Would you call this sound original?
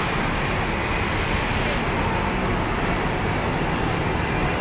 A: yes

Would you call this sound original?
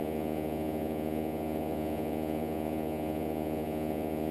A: no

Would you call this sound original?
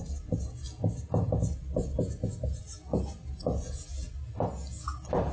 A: yes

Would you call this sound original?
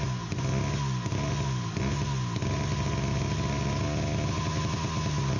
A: yes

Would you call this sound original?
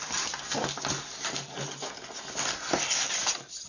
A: yes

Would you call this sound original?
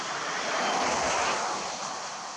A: yes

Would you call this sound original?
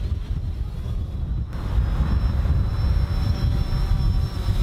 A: yes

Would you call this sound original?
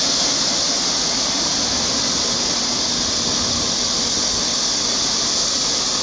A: yes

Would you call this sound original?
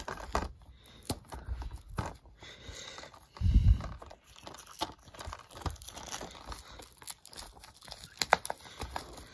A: yes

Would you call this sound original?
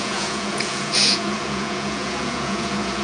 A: no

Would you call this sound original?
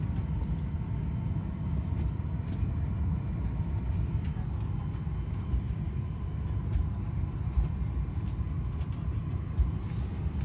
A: yes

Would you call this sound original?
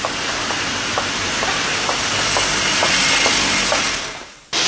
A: yes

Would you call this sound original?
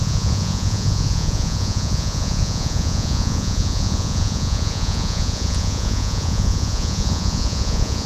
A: no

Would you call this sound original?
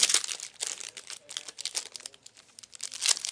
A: yes